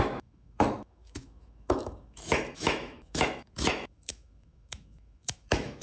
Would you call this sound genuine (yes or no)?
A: no